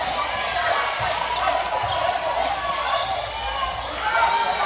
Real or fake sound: real